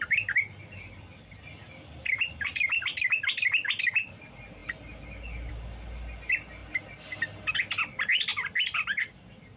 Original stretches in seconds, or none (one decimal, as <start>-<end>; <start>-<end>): 0.0-1.6; 3.1-8.3